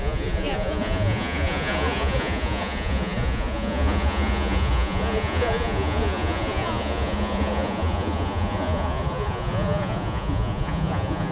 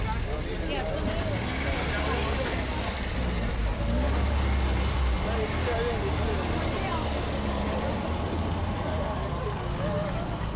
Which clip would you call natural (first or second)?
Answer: second